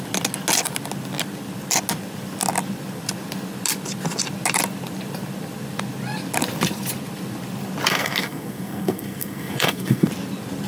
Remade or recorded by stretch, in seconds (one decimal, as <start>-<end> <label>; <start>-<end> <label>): 0.0-7.9 recorded; 7.9-10.1 remade; 10.1-10.7 recorded